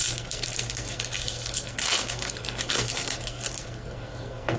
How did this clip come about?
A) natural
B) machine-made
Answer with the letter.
B